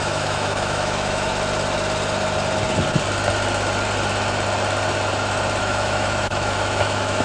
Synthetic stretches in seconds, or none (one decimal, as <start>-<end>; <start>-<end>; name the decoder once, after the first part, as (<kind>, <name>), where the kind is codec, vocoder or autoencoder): 0.0-1.3 (autoencoder, DAC-VAE); 5.6-7.2